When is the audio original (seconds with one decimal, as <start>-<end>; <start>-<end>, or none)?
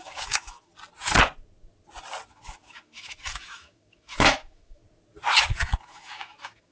0.7-2.3; 4.8-5.4